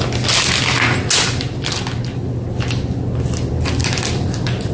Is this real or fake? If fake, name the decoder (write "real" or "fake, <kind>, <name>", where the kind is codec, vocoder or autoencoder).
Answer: real